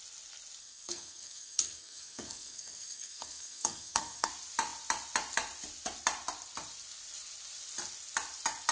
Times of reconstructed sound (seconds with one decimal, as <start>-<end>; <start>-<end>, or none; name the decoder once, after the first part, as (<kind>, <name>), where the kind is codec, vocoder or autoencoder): 0.6-4.3 (codec, SNAC)